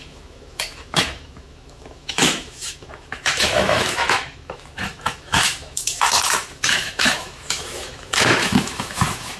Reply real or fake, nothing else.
fake